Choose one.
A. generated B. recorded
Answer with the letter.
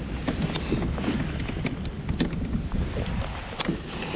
B